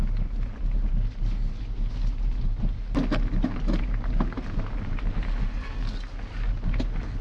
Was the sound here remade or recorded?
recorded